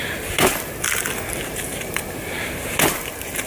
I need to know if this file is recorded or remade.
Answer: recorded